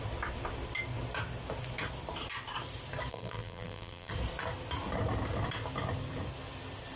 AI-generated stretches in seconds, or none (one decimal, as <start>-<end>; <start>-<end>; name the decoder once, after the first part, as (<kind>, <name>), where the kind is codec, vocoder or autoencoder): 3.1-4.1 (vocoder, BigVGAN v2)